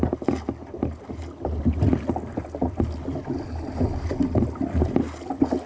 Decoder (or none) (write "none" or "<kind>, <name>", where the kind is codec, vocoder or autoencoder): none